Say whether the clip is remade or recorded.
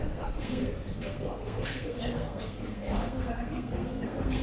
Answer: remade